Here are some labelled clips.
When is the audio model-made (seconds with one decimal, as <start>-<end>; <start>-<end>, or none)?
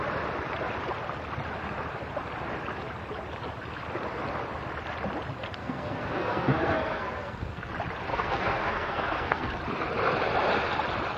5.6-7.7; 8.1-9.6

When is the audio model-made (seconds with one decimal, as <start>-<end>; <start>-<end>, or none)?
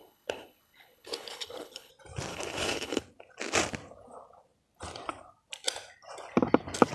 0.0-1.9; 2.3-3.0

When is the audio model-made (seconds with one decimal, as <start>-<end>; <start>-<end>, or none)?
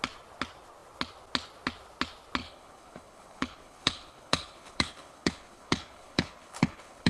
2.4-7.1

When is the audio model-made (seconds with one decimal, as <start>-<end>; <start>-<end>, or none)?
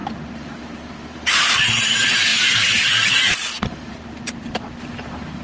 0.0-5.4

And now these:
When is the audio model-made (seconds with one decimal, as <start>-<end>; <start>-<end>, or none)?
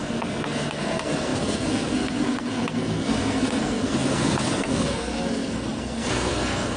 0.0-6.8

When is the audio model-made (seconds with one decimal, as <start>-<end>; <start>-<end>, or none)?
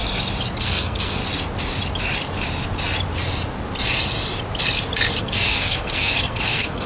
0.6-1.2; 5.2-6.9